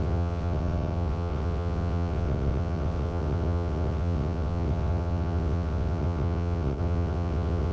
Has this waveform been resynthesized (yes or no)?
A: yes